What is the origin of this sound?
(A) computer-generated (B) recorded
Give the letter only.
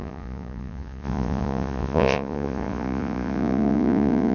A